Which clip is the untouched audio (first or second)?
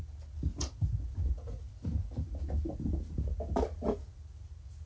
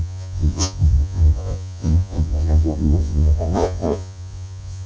first